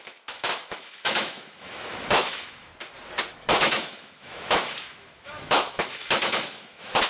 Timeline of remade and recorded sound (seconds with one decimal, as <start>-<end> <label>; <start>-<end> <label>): 0.0-2.7 remade; 2.7-3.3 recorded; 3.3-7.1 remade